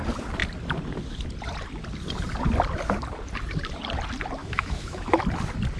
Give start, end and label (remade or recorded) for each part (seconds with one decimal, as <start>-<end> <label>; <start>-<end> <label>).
0.0-4.4 recorded; 4.4-5.2 remade; 5.2-5.8 recorded